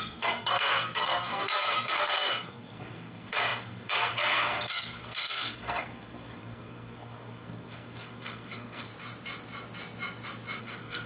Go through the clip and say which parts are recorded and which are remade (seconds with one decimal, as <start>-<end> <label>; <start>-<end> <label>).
0.0-8.9 remade; 8.9-10.6 recorded; 10.6-11.1 remade